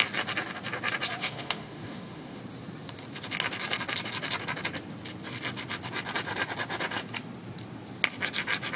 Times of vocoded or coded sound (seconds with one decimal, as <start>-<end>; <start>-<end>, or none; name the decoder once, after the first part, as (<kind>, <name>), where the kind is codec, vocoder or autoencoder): 1.2-2.4 (autoencoder, DAC-VAE)